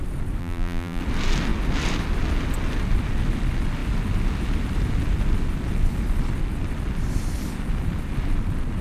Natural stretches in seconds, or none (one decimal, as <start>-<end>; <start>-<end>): 0.0-0.4; 1.0-8.8